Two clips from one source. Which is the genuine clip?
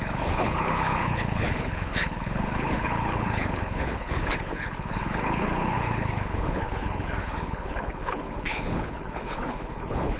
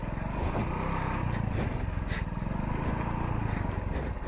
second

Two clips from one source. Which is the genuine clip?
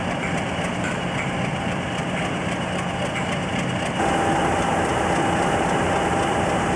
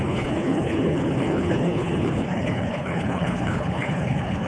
first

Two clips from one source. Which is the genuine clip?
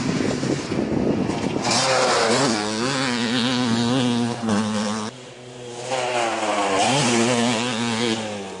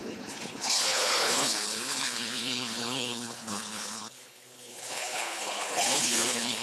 first